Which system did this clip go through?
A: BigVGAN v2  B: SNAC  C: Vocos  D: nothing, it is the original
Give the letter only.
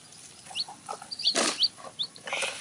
D